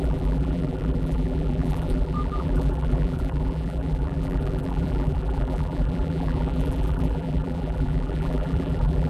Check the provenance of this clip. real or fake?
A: fake